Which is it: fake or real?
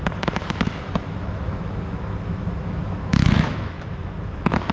fake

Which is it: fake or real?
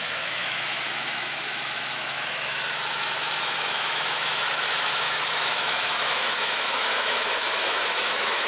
fake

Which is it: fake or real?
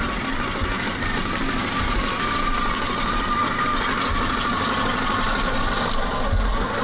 real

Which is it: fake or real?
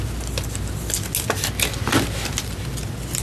real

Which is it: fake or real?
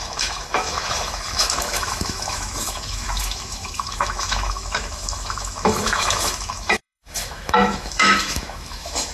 fake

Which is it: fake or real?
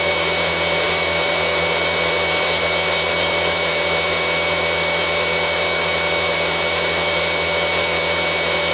fake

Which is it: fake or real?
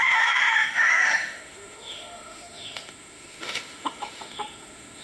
fake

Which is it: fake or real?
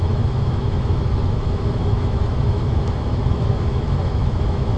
fake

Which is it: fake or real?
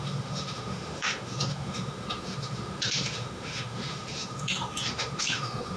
fake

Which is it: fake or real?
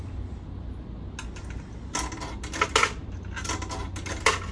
real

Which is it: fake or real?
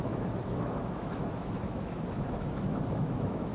fake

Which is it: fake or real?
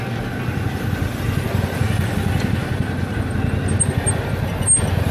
real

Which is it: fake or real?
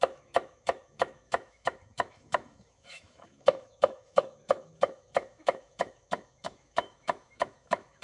fake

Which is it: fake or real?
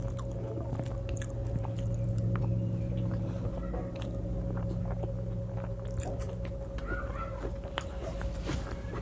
real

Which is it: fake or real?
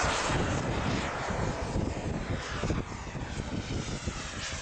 real